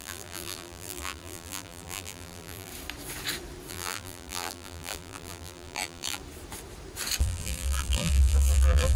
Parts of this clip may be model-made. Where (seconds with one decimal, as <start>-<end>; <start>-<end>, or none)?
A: 0.0-2.7; 3.7-6.2; 7.2-9.0